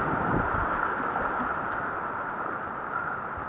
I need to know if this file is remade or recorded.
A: recorded